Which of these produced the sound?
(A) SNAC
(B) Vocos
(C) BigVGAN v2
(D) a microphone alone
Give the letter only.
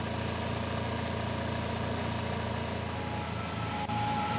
D